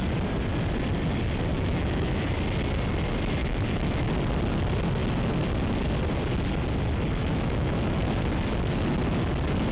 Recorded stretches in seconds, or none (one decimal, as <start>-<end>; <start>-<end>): 0.0-1.5; 2.3-3.4; 4.1-7.2; 8.1-9.7